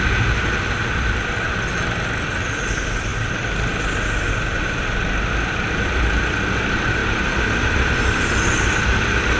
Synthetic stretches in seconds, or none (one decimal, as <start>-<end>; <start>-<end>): 0.0-7.0; 7.7-9.4